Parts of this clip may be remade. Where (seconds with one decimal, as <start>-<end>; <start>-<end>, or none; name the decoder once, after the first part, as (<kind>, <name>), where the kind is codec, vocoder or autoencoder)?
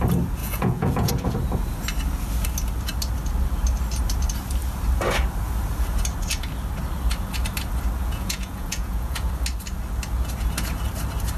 0.4-1.1 (vocoder, Vocos); 8.0-9.3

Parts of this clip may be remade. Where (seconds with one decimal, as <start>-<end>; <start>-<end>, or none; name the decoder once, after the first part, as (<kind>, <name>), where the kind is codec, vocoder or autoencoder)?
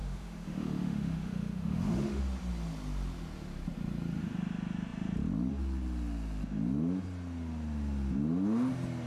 0.0-2.2 (autoencoder, DAC-VAE)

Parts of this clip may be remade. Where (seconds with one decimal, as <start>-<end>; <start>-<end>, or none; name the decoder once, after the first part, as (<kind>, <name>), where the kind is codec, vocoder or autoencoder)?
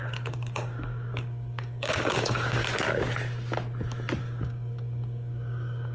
0.0-2.6 (codec, DAC); 4.2-5.9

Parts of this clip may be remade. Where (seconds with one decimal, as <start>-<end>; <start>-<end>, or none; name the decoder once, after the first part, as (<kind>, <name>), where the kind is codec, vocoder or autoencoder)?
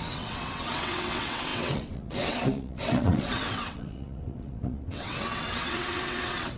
0.0-6.6 (vocoder, WaveNeXt)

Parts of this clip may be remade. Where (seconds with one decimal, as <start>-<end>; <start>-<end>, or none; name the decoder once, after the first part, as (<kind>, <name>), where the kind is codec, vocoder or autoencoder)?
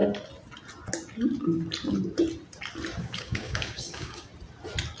3.0-4.3 (codec, DAC)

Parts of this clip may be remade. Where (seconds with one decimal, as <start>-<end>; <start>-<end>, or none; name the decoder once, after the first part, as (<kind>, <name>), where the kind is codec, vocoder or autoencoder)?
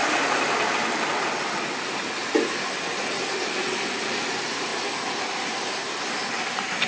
none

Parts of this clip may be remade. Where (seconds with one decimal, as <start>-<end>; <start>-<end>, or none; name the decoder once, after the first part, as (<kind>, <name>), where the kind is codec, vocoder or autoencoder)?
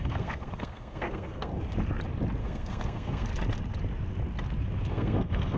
0.0-1.5 (codec, SNAC); 2.4-3.3; 4.9-5.6